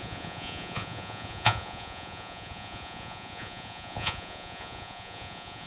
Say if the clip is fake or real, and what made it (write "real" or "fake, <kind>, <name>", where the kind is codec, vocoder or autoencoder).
fake, vocoder, Vocos